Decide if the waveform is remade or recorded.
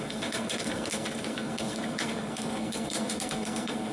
remade